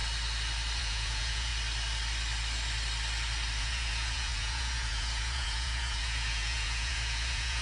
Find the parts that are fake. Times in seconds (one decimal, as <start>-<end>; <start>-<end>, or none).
0.8-1.5; 3.6-7.6